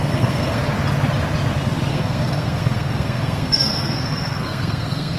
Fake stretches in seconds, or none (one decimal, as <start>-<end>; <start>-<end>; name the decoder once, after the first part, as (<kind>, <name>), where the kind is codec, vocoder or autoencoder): 0.0-0.6 (codec, SNAC); 1.9-5.2